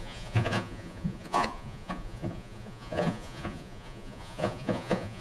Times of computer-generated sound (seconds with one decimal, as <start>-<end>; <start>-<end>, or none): 0.0-5.2